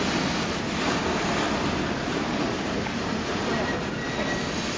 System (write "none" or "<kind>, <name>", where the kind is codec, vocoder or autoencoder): none